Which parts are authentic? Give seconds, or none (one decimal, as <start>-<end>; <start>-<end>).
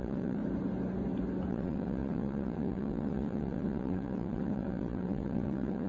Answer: 0.4-1.5